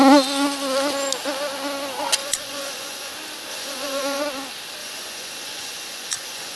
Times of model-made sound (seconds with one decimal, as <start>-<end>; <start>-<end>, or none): 2.2-3.1; 3.5-4.2; 4.8-6.6